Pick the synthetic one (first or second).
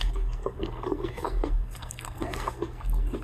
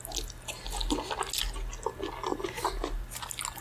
first